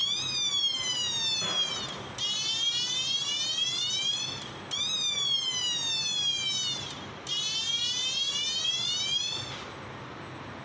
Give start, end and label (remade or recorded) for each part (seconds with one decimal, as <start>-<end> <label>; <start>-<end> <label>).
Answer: 0.0-10.6 recorded